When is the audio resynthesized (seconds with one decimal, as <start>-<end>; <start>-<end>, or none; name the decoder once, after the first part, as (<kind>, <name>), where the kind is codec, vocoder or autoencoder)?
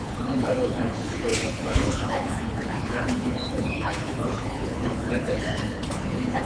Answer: 0.0-6.4 (codec, HILCodec)